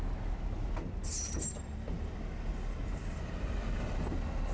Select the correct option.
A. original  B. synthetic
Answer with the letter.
A